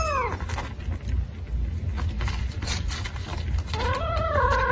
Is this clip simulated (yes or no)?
no